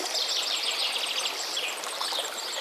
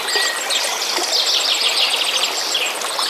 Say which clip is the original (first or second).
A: second